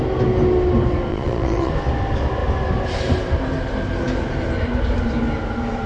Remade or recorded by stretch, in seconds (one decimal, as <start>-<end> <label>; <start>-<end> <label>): 0.0-1.1 recorded; 1.1-1.7 remade; 1.7-5.9 recorded